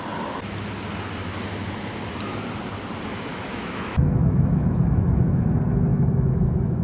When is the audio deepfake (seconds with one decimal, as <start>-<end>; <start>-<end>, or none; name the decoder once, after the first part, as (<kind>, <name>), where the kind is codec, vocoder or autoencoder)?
3.3-5.4 (autoencoder, DAC-VAE); 5.9-6.8